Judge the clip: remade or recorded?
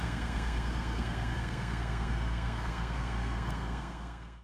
remade